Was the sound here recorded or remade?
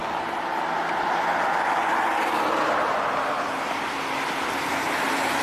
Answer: recorded